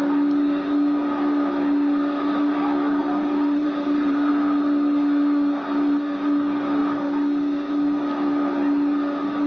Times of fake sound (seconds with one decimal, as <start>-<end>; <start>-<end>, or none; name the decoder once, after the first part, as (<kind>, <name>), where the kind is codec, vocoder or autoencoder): 3.0-4.3 (vocoder, BigVGAN v2)